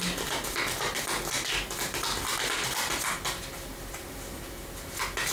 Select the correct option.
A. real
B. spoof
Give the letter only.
A